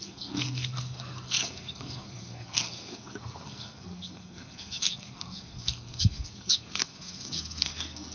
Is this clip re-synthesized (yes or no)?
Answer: yes